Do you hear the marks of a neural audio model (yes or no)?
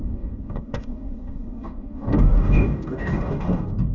yes